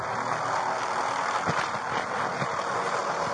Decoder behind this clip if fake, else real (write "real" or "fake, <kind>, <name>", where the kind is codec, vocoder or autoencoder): real